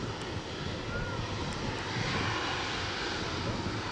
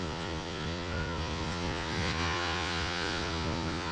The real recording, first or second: first